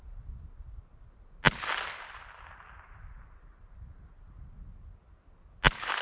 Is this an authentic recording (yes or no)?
yes